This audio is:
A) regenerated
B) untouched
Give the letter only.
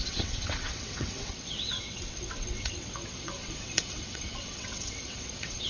A